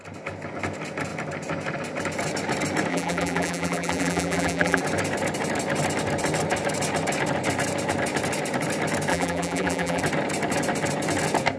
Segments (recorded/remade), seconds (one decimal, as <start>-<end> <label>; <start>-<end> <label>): 0.0-2.9 recorded; 2.9-4.8 remade; 4.8-9.1 recorded; 9.1-10.0 remade; 10.0-11.6 recorded